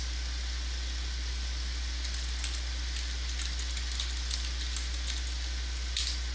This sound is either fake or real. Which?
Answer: real